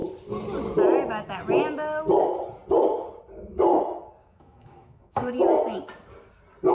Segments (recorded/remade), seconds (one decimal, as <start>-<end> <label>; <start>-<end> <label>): 0.0-4.2 recorded; 4.2-5.3 remade; 5.3-6.7 recorded